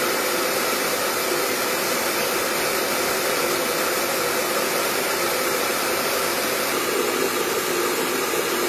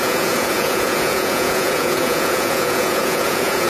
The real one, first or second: first